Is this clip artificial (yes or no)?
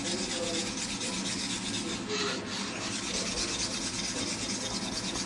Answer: no